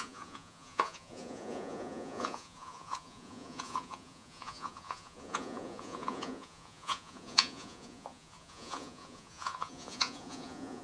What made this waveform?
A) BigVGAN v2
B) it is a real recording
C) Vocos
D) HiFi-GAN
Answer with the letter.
C